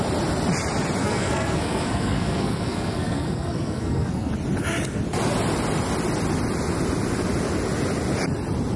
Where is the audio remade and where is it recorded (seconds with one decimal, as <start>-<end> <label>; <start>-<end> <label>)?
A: 0.0-1.0 recorded; 1.0-4.3 remade; 4.3-8.8 recorded

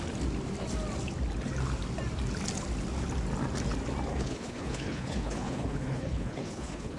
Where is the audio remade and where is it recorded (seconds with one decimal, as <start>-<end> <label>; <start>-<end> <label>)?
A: 0.0-4.1 recorded; 4.1-7.0 remade

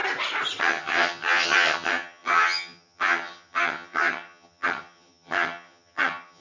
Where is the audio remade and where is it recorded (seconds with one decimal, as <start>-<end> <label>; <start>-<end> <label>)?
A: 0.0-0.6 recorded; 0.6-6.4 remade

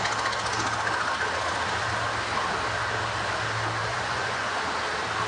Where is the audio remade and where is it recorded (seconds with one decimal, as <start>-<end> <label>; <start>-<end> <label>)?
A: 0.0-3.9 recorded; 3.9-4.6 remade; 4.6-5.3 recorded

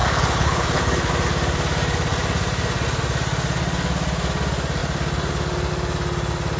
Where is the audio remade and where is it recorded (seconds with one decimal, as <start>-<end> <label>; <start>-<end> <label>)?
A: 0.0-1.1 remade; 1.1-6.6 recorded